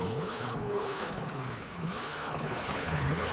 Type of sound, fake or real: fake